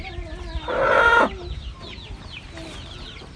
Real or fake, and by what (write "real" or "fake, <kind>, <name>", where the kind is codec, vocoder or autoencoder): real